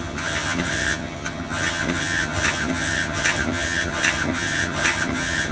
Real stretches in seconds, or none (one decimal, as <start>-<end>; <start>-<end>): none